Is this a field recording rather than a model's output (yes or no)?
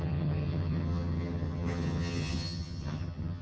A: no